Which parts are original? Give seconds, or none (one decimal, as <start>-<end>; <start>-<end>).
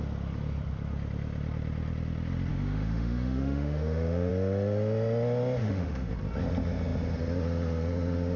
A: 0.0-2.5; 4.3-5.6; 6.1-8.4